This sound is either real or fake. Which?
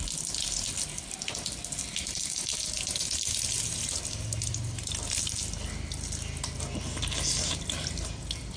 real